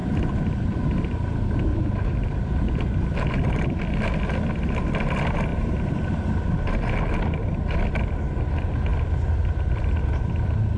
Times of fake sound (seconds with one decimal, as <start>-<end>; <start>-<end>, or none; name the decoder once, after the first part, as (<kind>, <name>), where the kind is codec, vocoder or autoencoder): 1.7-4.5 (vocoder, BigVGAN v2); 8.9-10.3